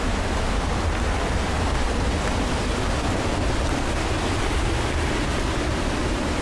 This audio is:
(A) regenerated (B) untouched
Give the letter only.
B